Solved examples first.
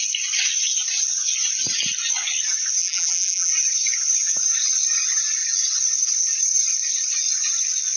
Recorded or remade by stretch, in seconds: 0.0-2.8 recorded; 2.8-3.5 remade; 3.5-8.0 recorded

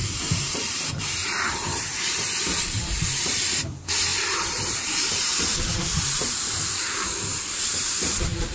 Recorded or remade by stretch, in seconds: 0.0-8.5 remade

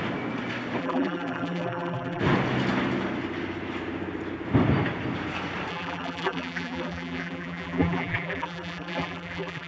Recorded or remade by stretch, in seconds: 0.0-0.8 recorded; 0.8-2.2 remade; 2.2-5.7 recorded; 5.7-9.7 remade

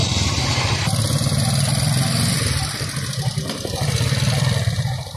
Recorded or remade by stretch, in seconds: 0.0-3.1 recorded; 3.1-5.2 remade

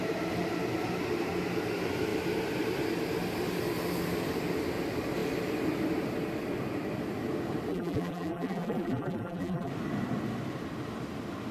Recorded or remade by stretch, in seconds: 0.0-7.7 recorded; 7.7-9.7 remade; 9.7-11.5 recorded

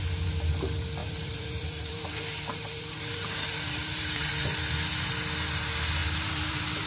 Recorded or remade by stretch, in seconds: 0.0-1.0 recorded; 1.0-4.3 remade; 4.3-6.0 recorded; 6.0-6.9 remade